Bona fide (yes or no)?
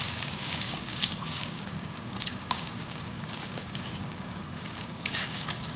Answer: no